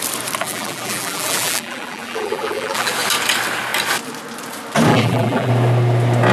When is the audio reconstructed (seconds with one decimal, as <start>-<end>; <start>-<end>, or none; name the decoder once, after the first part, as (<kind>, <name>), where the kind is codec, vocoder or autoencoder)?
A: 0.4-2.9 (vocoder, BigVGAN v2); 4.9-5.5